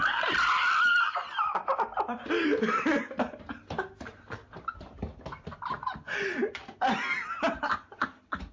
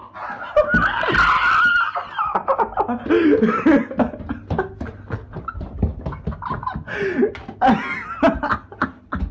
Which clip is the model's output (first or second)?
first